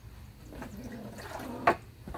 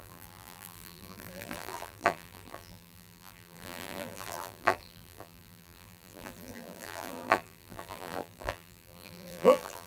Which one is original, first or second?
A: first